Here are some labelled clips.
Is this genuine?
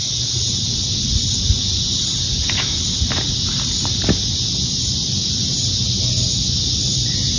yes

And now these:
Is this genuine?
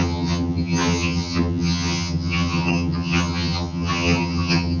no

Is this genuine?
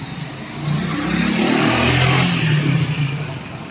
yes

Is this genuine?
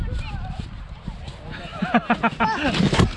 yes